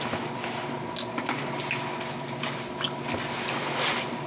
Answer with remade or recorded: recorded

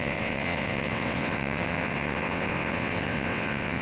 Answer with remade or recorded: remade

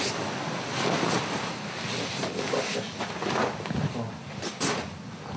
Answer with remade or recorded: recorded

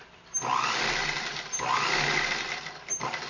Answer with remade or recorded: recorded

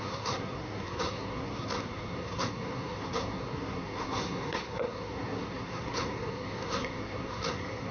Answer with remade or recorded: remade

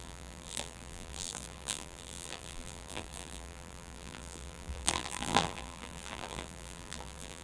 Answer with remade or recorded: remade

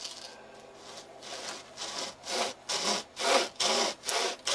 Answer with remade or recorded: recorded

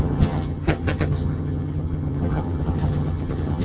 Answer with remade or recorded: remade